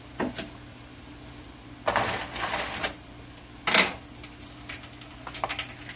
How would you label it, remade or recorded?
recorded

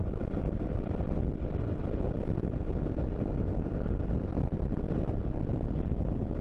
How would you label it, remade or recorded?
recorded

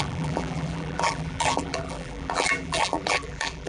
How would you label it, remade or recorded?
remade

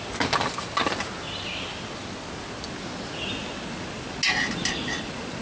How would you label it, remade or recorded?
recorded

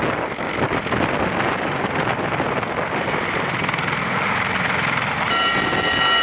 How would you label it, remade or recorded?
recorded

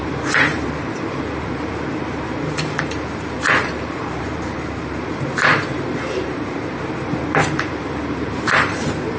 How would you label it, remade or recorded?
remade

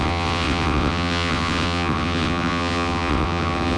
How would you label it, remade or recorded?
remade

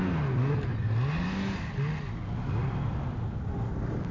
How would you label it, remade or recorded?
recorded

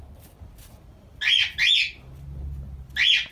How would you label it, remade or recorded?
recorded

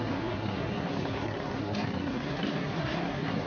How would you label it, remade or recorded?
remade